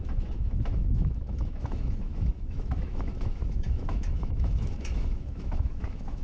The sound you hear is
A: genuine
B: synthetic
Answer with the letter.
B